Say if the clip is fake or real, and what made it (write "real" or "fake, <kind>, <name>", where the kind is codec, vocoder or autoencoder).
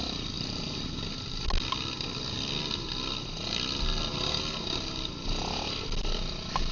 real